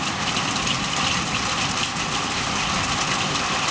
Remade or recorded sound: recorded